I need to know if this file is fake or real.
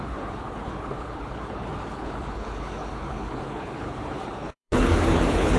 fake